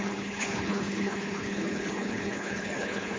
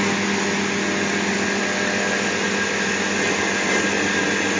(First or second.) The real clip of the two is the second